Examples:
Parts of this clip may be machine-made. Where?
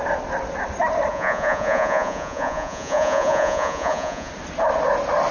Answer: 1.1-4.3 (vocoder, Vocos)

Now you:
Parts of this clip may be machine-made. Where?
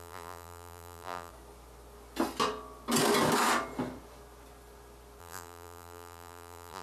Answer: 0.0-1.3 (vocoder, BigVGAN v2); 5.2-6.8